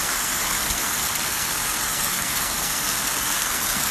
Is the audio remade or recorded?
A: remade